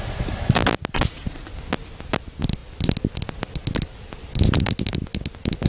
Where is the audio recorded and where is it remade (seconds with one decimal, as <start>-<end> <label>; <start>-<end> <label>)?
0.0-5.7 recorded